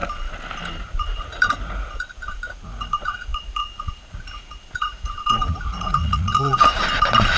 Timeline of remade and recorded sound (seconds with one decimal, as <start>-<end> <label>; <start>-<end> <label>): 0.0-0.8 recorded; 0.8-6.8 remade; 6.8-7.4 recorded